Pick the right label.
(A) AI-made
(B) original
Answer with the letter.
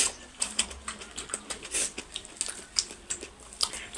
B